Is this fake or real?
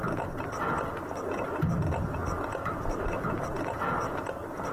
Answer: real